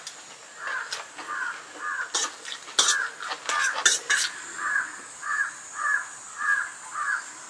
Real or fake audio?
real